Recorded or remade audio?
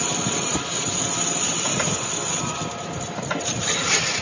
recorded